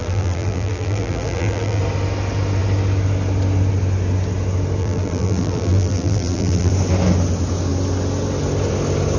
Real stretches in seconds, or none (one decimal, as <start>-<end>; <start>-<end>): 1.8-4.8; 6.7-9.2